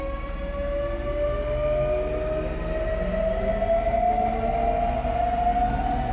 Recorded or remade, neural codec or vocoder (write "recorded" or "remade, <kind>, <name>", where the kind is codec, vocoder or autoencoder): recorded